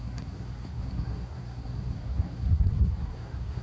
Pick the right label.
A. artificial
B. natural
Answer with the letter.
A